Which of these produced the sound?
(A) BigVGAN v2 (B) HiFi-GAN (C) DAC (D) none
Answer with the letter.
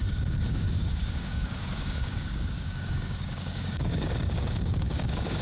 C